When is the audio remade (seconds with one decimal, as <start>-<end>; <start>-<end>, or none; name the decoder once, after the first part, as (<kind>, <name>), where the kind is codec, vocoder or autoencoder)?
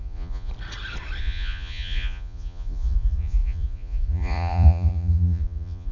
0.0-0.5 (vocoder, Vocos); 1.2-5.9